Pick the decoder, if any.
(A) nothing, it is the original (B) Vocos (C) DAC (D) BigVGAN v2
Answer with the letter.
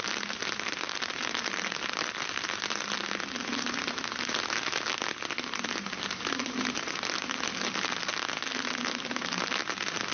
A